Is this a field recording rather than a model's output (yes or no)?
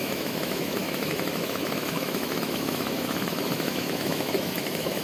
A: no